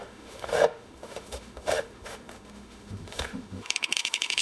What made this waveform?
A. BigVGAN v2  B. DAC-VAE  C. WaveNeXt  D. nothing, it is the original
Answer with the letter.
B